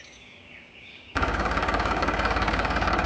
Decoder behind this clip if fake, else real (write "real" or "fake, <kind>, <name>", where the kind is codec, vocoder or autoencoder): fake, codec, DAC